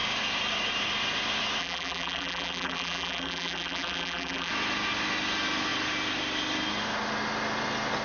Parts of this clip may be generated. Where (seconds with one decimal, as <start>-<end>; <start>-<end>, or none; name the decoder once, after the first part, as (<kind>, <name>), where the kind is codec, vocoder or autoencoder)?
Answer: 1.6-4.5 (vocoder, BigVGAN v2)